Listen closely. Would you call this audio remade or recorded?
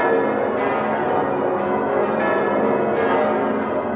recorded